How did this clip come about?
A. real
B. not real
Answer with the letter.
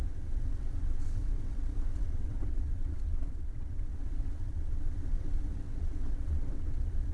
B